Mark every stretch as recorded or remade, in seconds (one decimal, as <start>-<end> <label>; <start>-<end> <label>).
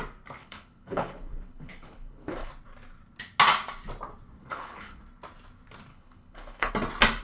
0.0-0.4 recorded; 0.4-2.5 remade; 2.5-4.4 recorded; 4.4-5.0 remade; 5.0-5.9 recorded; 5.9-6.7 remade; 6.7-7.2 recorded